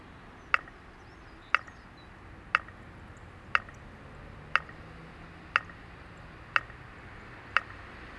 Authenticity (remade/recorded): recorded